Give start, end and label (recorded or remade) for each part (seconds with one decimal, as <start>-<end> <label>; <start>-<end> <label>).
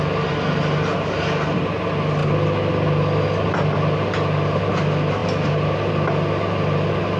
0.0-7.2 recorded